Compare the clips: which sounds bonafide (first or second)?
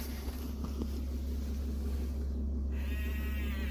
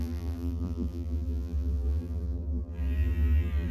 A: first